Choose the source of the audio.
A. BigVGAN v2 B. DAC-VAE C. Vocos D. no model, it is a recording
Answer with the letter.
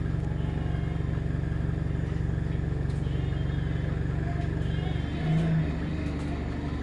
D